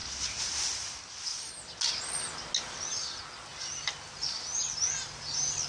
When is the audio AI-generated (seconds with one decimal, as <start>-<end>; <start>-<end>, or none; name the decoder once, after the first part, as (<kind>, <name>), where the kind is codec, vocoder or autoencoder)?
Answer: none